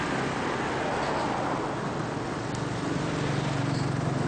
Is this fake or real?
real